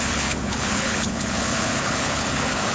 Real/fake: fake